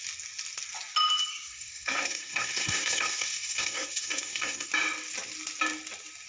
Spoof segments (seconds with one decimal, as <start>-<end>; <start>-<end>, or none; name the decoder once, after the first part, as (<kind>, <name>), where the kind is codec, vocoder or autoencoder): 1.3-4.7 (codec, SNAC)